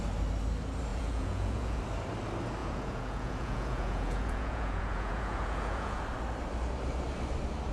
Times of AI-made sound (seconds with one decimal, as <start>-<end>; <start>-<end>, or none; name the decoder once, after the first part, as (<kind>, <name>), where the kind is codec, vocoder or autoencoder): 0.9-1.8 (vocoder, Vocos); 2.6-6.0